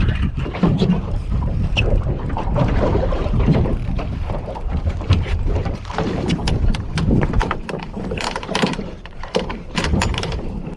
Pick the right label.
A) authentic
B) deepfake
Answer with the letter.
B